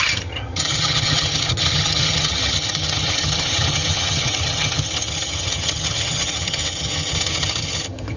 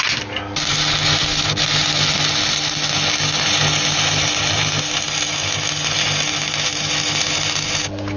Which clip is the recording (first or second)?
second